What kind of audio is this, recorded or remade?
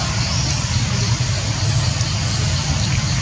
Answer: recorded